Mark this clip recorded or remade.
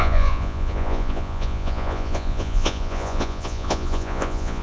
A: remade